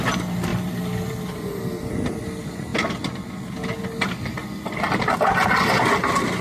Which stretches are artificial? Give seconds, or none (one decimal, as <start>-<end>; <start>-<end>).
0.5-1.9